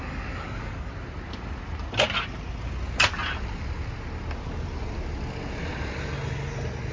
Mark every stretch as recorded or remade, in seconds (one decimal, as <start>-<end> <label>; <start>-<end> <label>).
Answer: 0.0-0.9 remade; 0.9-6.9 recorded